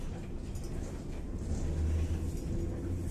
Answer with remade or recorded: recorded